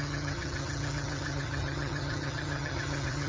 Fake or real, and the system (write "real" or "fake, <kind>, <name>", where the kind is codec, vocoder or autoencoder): fake, vocoder, HiFi-GAN